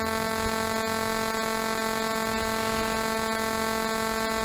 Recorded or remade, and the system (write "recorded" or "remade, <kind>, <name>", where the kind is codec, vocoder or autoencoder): recorded